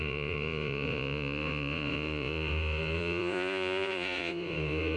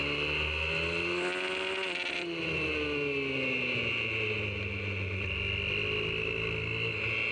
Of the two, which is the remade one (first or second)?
first